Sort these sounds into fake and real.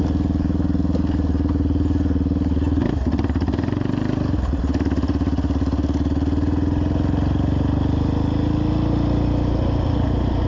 real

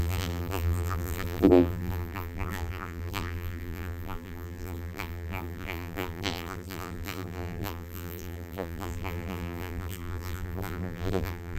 fake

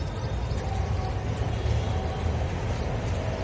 real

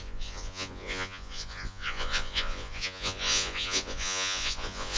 fake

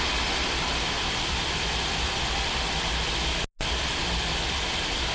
real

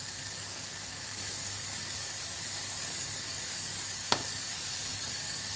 fake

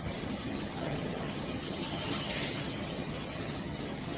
fake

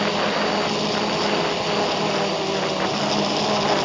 real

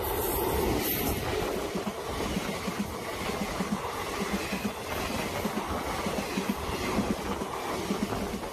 real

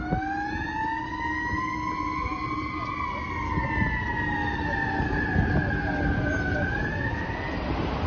real